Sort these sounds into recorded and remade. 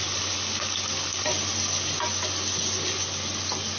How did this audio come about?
recorded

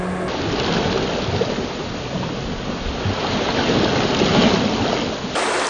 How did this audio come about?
recorded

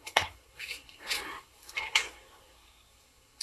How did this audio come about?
remade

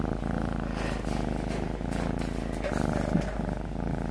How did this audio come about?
recorded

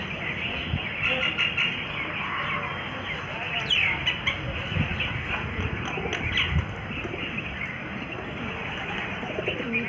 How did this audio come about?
recorded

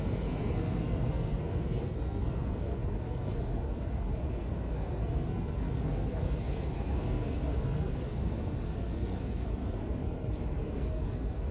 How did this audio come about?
remade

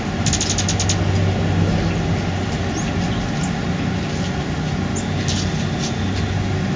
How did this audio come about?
recorded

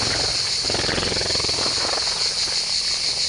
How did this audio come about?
recorded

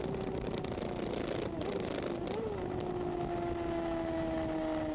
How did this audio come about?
recorded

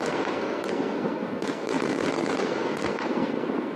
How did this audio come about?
remade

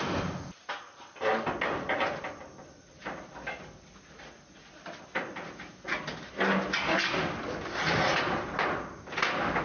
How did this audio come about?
recorded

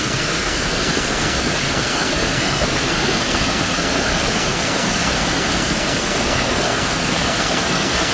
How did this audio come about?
remade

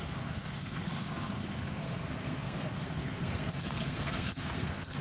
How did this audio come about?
remade